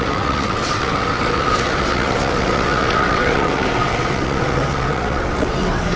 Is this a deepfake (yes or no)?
yes